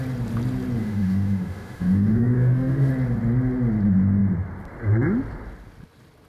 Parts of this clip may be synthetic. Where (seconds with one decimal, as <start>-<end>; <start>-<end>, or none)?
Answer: 0.8-2.9